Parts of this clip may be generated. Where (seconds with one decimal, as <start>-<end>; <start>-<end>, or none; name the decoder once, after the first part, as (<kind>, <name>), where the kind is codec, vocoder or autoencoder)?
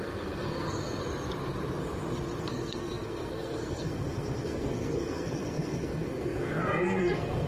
0.0-1.0 (codec, SNAC); 2.4-7.5